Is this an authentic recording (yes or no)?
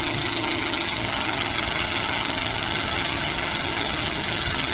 no